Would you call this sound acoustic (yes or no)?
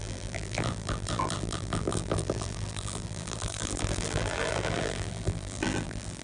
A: no